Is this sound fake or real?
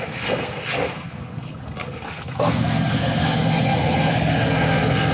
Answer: fake